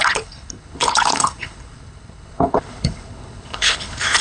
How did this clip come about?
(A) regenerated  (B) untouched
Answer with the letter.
A